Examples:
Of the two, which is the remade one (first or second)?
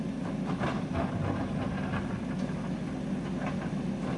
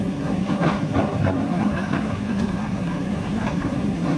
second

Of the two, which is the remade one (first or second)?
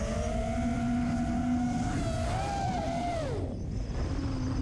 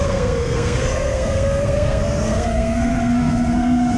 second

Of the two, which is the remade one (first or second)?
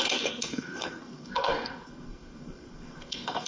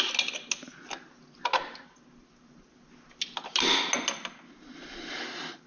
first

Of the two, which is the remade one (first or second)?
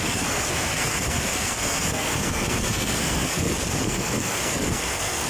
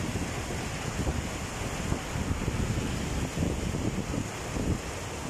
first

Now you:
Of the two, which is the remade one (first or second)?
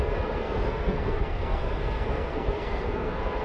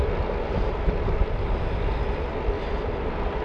first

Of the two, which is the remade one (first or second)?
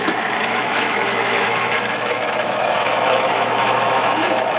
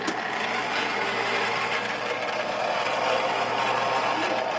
first